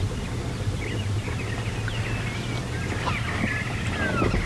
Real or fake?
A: real